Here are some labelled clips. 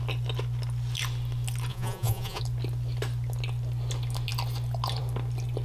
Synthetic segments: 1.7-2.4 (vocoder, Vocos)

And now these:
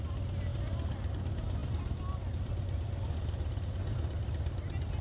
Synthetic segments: none